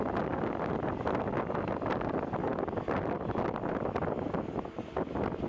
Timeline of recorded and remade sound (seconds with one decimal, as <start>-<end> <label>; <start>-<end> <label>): 0.0-5.5 recorded